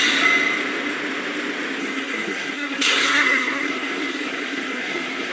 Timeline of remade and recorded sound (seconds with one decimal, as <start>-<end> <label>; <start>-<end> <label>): 0.0-1.8 recorded; 1.8-5.3 remade